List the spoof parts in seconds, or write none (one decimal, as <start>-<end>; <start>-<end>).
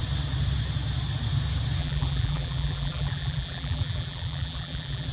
1.8-5.1